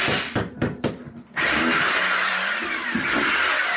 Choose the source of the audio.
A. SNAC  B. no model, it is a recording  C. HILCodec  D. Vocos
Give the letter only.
B